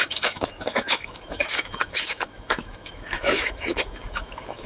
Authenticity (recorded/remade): remade